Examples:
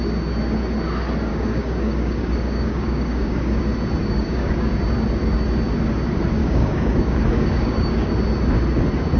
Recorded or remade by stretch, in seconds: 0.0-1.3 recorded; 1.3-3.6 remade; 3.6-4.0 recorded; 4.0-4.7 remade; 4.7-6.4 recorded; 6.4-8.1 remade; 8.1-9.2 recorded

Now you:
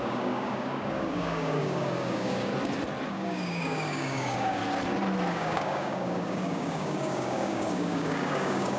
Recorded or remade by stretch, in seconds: 0.0-2.5 remade; 2.5-3.1 recorded; 3.1-4.6 remade; 4.6-5.3 recorded; 5.3-8.8 remade

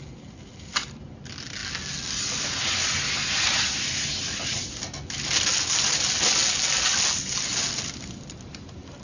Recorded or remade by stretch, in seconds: 0.0-9.0 recorded

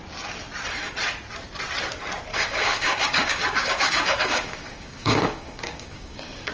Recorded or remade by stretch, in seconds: 0.0-2.3 recorded; 2.3-6.5 remade

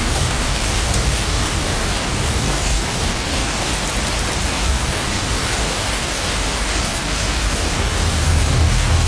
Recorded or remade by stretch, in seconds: 0.0-3.7 remade; 3.7-4.4 recorded; 4.4-9.1 remade

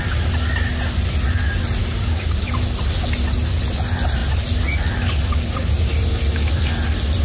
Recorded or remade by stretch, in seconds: 0.0-1.8 recorded; 1.8-2.5 remade; 2.5-7.2 recorded

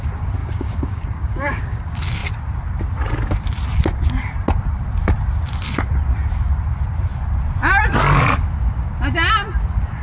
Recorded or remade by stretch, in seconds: 0.0-0.4 recorded; 0.4-1.8 remade; 1.8-10.0 recorded